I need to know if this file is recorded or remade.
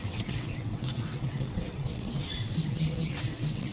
remade